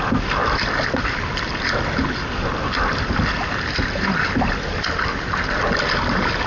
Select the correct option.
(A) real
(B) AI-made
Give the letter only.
A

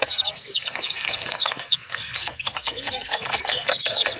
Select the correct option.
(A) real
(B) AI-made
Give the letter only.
B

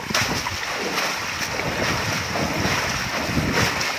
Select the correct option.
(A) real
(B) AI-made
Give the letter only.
A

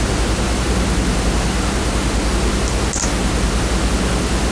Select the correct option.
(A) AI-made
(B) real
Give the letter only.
B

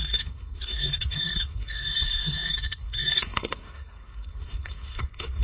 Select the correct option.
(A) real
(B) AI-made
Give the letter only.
B